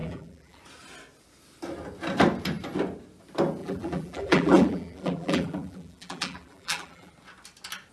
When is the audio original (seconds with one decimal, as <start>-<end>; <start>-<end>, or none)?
0.6-3.6; 7.1-7.9